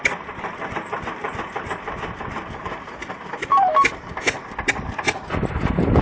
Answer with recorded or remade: recorded